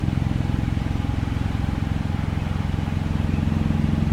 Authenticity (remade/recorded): recorded